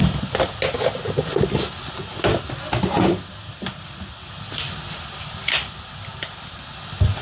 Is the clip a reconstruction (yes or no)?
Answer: no